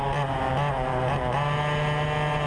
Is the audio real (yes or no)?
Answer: yes